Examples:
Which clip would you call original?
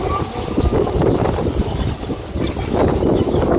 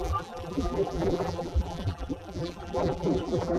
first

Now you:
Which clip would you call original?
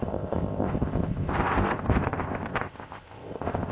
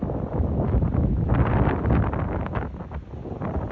second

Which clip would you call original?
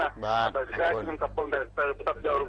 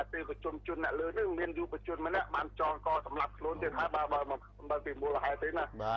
second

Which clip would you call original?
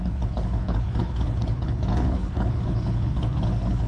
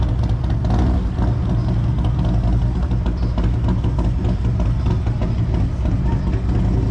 second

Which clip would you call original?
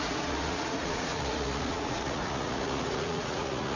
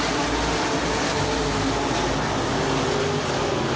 second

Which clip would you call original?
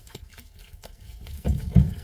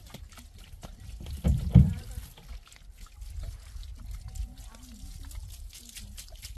second